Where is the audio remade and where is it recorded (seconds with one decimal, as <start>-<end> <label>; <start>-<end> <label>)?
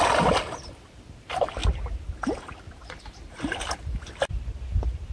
0.0-5.1 recorded